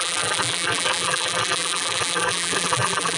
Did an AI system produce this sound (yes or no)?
yes